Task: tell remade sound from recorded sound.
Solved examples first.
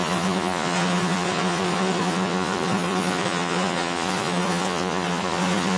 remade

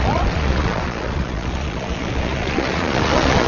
remade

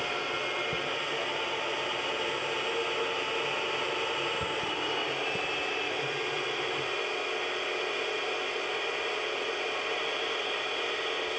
recorded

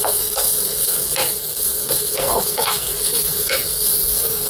remade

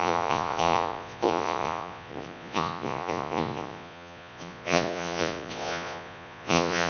remade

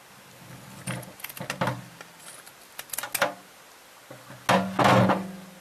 recorded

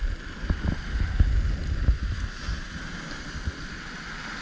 recorded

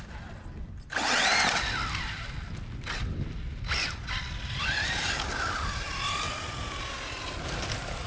recorded